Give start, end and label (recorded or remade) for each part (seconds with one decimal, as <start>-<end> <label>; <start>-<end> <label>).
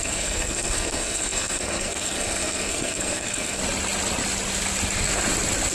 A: 0.0-3.6 remade; 3.6-5.7 recorded